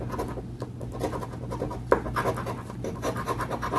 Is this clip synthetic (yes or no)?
no